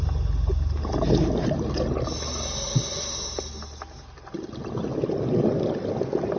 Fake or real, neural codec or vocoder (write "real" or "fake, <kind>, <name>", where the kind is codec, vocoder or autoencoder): real